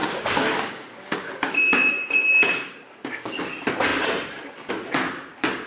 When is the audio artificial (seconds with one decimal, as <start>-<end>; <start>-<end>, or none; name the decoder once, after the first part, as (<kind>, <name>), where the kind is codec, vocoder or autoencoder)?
0.0-3.4 (codec, DAC)